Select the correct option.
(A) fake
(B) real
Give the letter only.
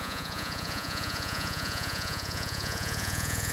A